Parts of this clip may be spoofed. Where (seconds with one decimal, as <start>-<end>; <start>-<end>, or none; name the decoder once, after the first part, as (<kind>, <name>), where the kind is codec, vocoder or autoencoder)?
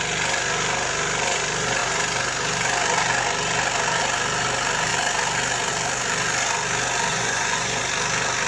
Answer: 7.1-7.8 (vocoder, Vocos)